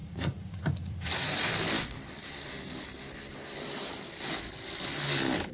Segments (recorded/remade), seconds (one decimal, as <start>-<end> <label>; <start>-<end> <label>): 0.0-1.5 remade; 1.5-5.5 recorded